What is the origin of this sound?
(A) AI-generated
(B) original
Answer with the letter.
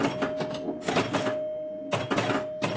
B